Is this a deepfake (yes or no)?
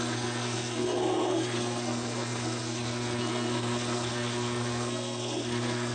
yes